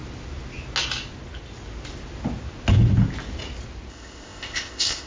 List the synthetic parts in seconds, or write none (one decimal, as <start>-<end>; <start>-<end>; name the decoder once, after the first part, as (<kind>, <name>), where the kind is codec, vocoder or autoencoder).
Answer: 3.9-5.1 (codec, ZipCodec)